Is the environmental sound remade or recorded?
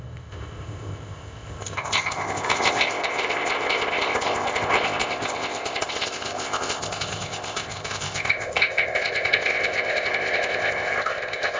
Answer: remade